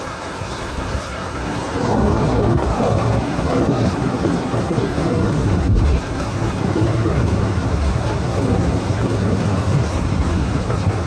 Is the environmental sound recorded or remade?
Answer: remade